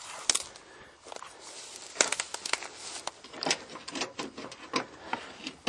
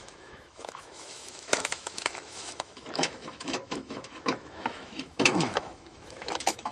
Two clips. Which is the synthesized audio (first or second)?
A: second